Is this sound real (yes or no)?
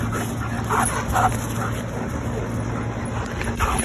yes